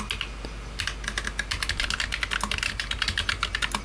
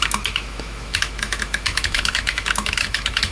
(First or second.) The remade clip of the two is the second